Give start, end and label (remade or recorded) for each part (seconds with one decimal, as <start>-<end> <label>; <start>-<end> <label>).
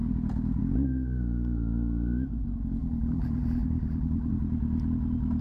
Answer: 0.0-2.8 recorded; 2.8-4.3 remade; 4.3-5.4 recorded